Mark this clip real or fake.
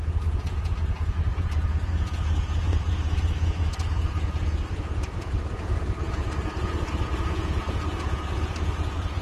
fake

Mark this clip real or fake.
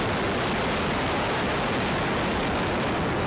real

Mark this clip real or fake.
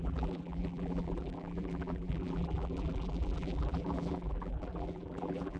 fake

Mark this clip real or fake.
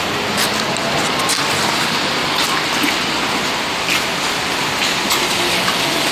real